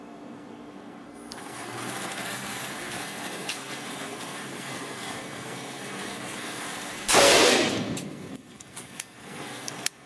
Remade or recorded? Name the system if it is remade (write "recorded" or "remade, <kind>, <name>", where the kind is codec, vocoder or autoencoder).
remade, codec, SNAC